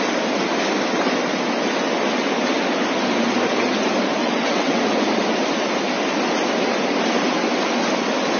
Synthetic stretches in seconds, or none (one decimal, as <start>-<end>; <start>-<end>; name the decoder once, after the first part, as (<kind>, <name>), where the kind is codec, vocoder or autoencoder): 4.2-4.8 (vocoder, WaveNeXt)